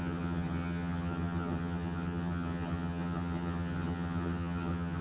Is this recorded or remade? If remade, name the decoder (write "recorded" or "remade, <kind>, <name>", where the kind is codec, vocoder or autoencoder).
remade, vocoder, HiFi-GAN